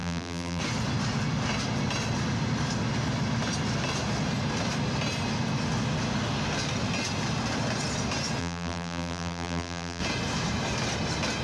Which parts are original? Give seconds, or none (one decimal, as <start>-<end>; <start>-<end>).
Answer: 0.6-8.4; 10.0-11.4

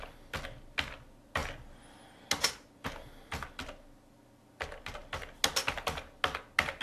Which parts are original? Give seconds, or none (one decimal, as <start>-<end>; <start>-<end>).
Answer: 0.0-6.8

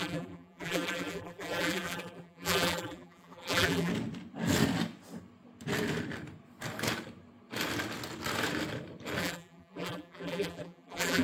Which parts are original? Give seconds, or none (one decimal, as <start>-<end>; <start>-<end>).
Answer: 3.9-9.2

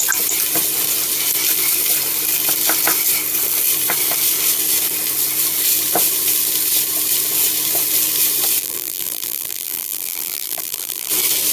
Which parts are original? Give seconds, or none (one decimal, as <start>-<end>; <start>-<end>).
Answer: 0.0-8.6; 11.1-11.5

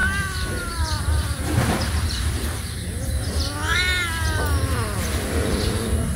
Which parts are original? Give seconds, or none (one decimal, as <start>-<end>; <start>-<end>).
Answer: 3.1-6.2

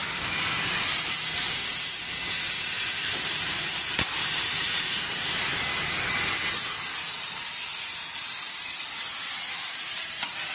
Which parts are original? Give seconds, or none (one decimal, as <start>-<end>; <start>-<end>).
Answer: 5.7-8.9

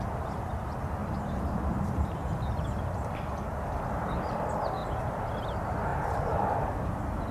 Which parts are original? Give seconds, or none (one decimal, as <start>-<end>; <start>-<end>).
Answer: 0.0-1.0; 2.4-5.9

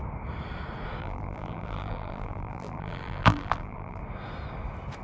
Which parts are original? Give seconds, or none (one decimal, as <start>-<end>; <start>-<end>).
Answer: 0.0-1.0; 4.0-5.0